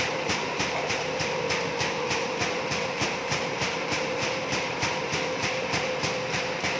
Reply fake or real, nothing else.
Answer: fake